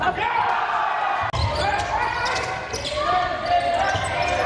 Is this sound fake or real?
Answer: real